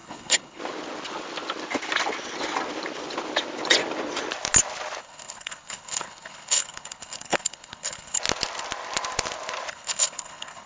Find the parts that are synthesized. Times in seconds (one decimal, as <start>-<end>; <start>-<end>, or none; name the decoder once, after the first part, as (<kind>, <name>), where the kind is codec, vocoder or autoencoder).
0.0-0.6 (codec, HILCodec); 5.0-8.2; 9.7-10.7